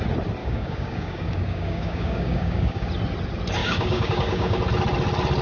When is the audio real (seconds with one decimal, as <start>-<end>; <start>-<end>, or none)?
0.0-0.4; 2.9-3.6; 4.6-5.4